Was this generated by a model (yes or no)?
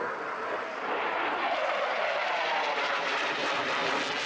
no